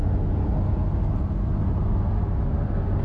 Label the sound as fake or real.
real